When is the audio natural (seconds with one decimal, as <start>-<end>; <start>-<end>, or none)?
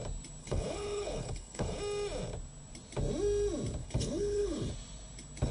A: 0.0-0.4; 1.8-3.8; 4.7-5.5